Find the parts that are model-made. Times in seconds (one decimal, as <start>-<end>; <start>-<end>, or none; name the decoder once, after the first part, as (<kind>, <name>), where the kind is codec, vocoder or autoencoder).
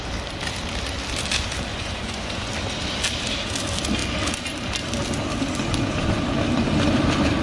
1.7-2.5 (vocoder, Vocos)